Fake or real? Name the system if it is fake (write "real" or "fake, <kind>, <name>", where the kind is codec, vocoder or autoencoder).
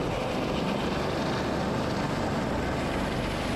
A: real